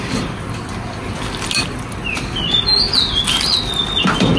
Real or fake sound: real